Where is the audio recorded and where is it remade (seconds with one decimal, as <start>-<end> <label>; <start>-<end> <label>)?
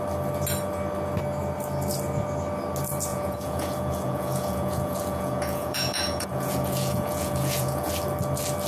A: 0.0-3.1 recorded; 3.1-7.9 remade; 7.9-8.7 recorded